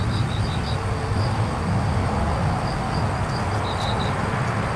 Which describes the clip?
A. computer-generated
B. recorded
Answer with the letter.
B